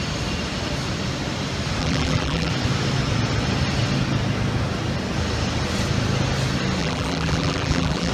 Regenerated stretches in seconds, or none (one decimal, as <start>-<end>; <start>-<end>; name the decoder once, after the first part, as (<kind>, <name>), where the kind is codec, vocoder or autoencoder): 1.8-2.5 (vocoder, BigVGAN v2); 6.8-8.1